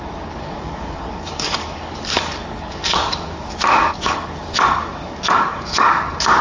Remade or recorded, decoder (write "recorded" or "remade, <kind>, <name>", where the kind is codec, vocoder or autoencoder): remade, codec, DAC